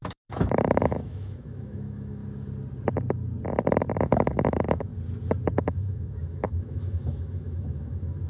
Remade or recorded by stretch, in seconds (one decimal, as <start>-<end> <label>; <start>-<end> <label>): 0.0-2.2 remade; 2.2-4.0 recorded; 4.0-4.9 remade; 4.9-5.5 recorded; 5.5-8.3 remade